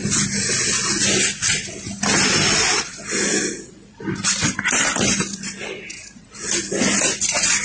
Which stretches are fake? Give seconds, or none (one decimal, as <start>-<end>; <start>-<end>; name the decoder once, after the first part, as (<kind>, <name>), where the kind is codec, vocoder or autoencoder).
1.5-7.6 (vocoder, BigVGAN v2)